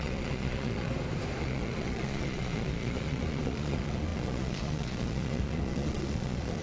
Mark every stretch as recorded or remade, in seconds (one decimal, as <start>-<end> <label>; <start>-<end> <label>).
0.0-0.9 remade; 0.9-1.4 recorded; 1.4-6.6 remade

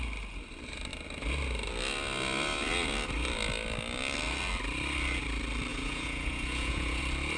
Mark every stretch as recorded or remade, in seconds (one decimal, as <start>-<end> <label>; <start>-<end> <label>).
0.0-5.7 recorded; 5.7-7.0 remade; 7.0-7.4 recorded

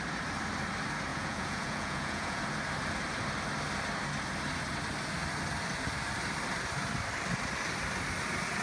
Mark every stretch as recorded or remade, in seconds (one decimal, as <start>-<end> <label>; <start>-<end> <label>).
0.0-1.1 recorded; 1.1-2.4 remade; 2.4-8.6 recorded